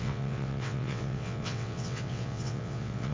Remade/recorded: remade